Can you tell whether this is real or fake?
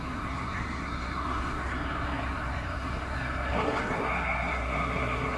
fake